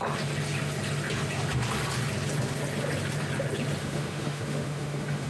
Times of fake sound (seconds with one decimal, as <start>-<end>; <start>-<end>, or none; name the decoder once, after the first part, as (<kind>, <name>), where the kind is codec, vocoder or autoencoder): 3.8-5.3 (autoencoder, DAC-VAE)